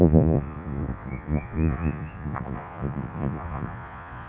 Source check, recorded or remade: remade